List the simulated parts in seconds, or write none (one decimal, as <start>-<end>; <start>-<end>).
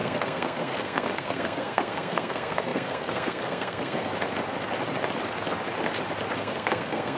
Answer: 0.0-4.1; 6.4-7.2